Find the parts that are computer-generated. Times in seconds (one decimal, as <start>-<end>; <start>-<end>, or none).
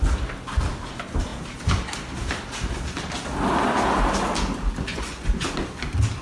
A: 4.9-5.6